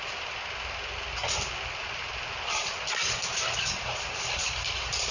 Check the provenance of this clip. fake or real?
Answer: real